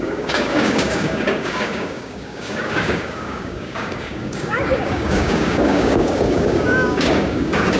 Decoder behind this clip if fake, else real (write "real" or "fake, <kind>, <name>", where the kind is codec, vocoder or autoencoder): fake, codec, DAC